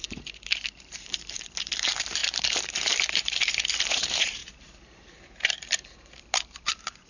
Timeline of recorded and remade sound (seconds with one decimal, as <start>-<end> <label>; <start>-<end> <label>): 0.0-7.1 remade